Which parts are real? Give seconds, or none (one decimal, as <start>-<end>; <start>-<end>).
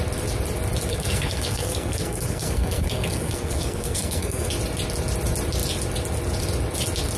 0.0-0.9; 4.5-7.2